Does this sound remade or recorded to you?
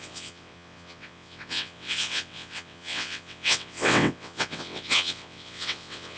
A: remade